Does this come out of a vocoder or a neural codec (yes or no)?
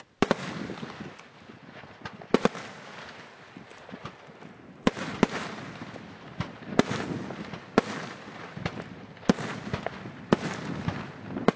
no